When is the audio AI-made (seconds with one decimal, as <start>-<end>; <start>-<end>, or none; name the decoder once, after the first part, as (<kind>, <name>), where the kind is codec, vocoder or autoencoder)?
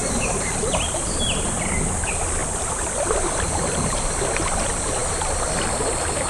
0.0-1.5 (vocoder, BigVGAN v2); 2.4-4.1